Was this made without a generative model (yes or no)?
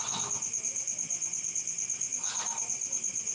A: yes